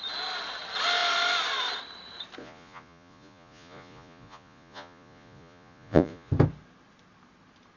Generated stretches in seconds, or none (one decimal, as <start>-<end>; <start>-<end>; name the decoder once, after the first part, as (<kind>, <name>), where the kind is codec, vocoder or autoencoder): 2.4-6.3 (vocoder, Vocos)